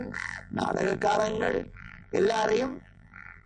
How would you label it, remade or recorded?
remade